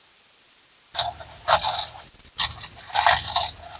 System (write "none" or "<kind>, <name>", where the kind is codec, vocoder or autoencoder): none